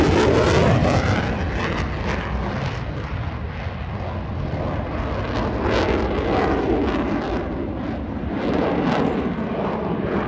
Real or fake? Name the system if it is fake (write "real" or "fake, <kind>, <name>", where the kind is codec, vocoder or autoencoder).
real